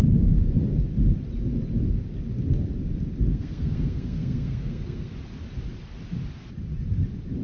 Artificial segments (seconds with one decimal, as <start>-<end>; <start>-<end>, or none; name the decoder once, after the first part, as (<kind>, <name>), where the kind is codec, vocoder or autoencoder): 3.3-5.1 (codec, SNAC)